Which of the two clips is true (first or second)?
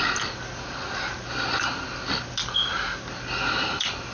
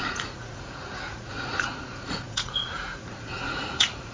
first